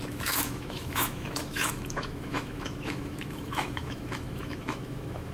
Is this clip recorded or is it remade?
remade